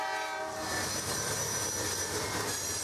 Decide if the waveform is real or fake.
real